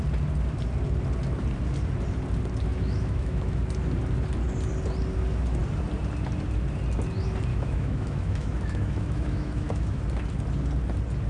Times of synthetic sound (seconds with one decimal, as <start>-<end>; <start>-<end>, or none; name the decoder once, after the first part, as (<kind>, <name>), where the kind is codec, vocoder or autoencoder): 2.7-3.6 (autoencoder, DAC-VAE); 7.5-10.0